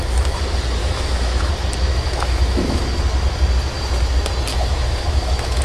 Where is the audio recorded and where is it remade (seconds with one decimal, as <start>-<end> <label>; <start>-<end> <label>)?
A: 0.0-0.8 recorded; 0.8-1.5 remade; 1.5-1.9 recorded; 1.9-2.8 remade; 2.8-4.5 recorded; 4.5-5.6 remade